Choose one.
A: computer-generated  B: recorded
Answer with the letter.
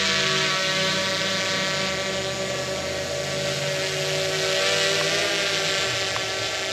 B